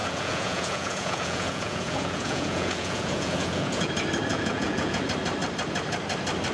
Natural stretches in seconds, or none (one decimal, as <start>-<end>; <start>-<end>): 3.9-4.3; 5.0-6.5